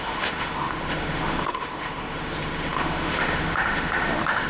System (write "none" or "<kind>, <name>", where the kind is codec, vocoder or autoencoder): autoencoder, DAC-VAE